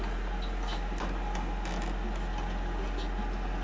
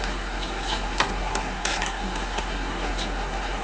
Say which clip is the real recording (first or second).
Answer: first